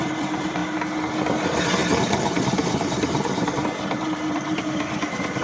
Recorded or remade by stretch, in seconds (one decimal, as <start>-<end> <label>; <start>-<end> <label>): 0.0-0.6 remade; 0.6-1.4 recorded; 1.4-5.4 remade